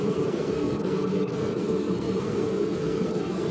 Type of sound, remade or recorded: remade